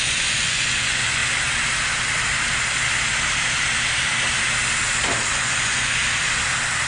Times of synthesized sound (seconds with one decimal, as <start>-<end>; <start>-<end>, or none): 0.0-1.2; 5.3-6.0